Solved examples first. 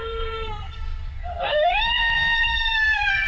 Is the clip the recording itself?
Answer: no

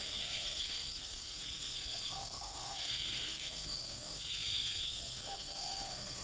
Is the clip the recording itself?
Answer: no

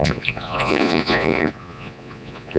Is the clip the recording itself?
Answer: no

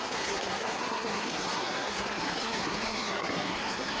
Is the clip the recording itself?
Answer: no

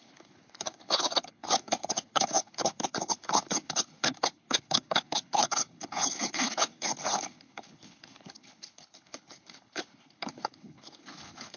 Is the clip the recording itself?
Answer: no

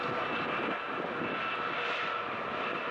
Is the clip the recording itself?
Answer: yes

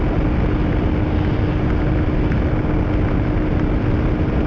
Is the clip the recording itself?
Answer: yes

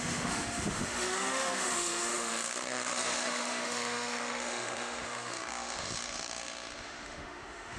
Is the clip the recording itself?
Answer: no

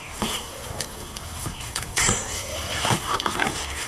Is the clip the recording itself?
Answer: no